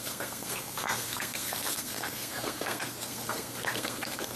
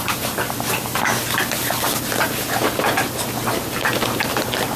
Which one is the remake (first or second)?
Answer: first